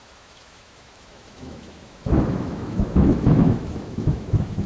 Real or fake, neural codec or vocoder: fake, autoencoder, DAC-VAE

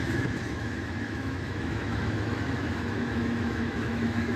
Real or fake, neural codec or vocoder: fake, autoencoder, DAC-VAE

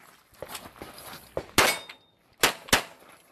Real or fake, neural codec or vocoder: real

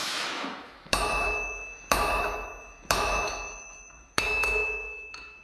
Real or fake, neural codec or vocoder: fake, autoencoder, DAC-VAE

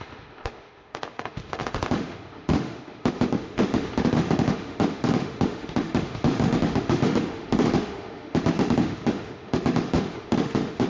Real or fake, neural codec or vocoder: fake, autoencoder, DAC-VAE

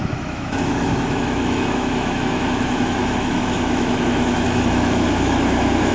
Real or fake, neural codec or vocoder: fake, autoencoder, DAC-VAE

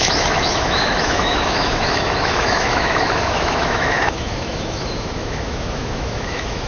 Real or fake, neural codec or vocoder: fake, autoencoder, DAC-VAE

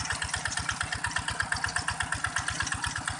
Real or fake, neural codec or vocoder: real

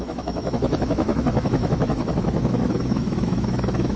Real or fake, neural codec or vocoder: fake, autoencoder, DAC-VAE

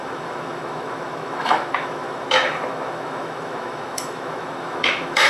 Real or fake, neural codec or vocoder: fake, autoencoder, DAC-VAE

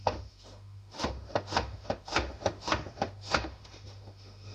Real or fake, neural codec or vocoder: fake, autoencoder, DAC-VAE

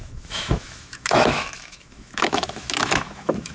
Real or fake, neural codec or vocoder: fake, autoencoder, DAC-VAE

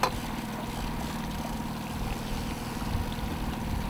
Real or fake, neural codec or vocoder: real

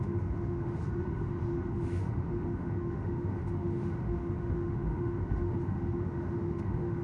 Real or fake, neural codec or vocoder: fake, autoencoder, DAC-VAE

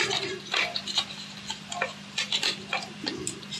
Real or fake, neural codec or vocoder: real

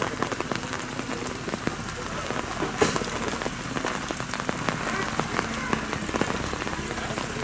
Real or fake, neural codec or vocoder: real